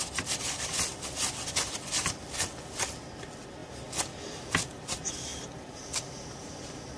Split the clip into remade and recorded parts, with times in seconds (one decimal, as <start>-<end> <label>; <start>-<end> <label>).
0.0-7.0 recorded